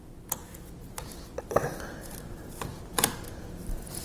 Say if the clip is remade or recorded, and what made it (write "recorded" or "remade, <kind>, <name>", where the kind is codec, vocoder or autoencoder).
recorded